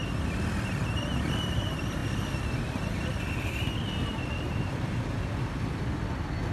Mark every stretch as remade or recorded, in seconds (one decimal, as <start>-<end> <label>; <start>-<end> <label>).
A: 0.0-6.5 recorded